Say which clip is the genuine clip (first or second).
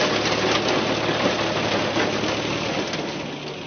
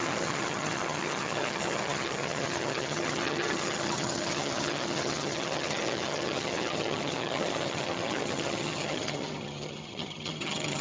first